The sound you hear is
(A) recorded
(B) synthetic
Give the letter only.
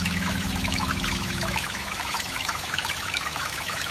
B